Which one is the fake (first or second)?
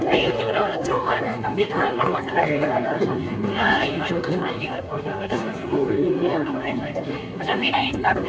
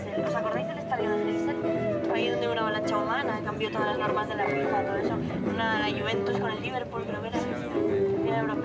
first